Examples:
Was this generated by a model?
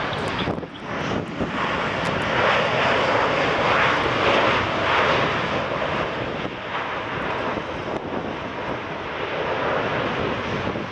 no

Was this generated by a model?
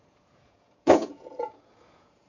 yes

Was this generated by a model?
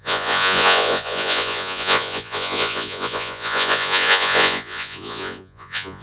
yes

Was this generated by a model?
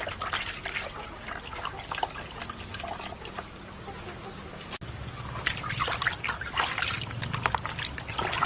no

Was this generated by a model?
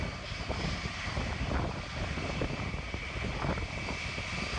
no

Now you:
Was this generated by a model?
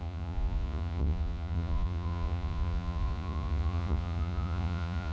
yes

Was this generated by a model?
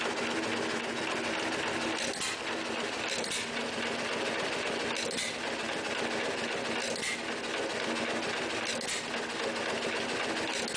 no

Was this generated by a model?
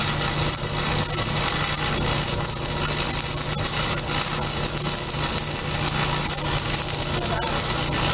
no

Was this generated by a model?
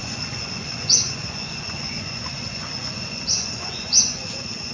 yes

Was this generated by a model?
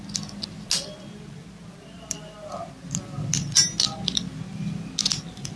no